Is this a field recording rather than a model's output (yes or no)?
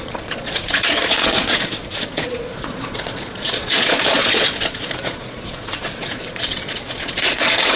no